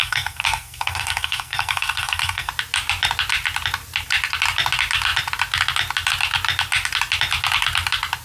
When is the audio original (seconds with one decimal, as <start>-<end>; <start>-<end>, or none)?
2.5-8.2